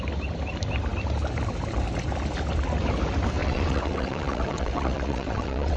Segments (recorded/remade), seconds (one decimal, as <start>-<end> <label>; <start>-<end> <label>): 0.0-3.4 recorded; 3.4-5.8 remade